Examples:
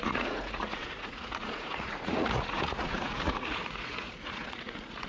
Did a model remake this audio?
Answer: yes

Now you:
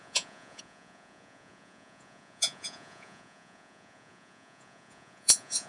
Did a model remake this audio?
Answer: yes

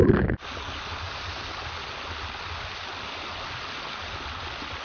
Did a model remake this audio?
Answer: no